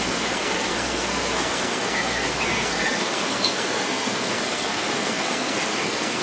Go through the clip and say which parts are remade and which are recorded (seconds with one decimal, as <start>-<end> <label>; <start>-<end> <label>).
0.0-6.2 remade